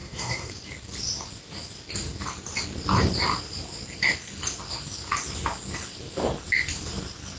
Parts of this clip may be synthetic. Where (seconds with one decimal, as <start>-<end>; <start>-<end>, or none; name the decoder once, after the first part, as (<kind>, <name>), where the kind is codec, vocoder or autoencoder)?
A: 0.0-0.5 (codec, SNAC)